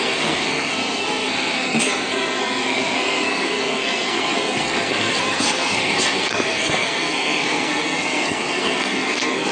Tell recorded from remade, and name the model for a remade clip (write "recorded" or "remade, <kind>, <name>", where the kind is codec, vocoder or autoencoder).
remade, codec, SNAC